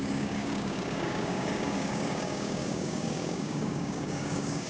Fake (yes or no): yes